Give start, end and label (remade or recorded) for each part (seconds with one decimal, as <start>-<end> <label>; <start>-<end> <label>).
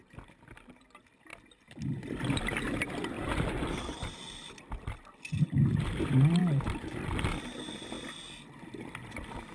0.0-1.3 recorded; 1.3-6.0 remade; 6.0-6.4 recorded; 6.4-7.9 remade; 7.9-9.5 recorded